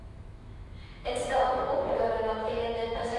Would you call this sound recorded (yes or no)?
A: no